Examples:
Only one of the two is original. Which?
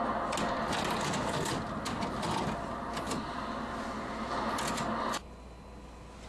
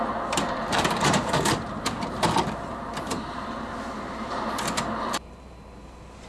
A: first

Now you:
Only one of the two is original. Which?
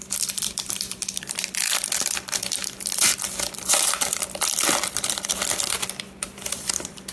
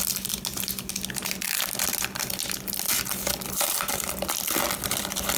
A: second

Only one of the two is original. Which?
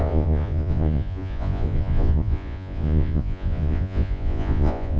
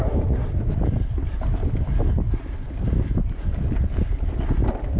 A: second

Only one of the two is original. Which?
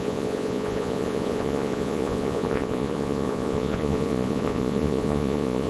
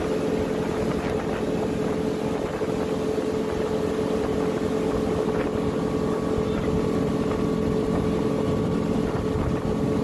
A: second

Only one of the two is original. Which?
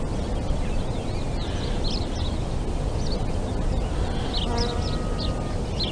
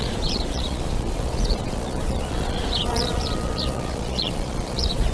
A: first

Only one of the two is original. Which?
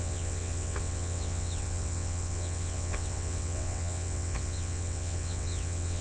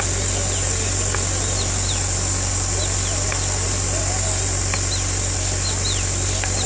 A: second